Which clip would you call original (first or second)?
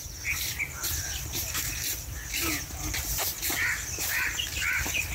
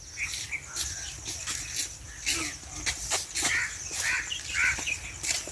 second